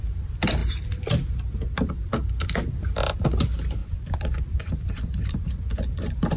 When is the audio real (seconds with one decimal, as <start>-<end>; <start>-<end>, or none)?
0.0-3.8; 5.5-6.4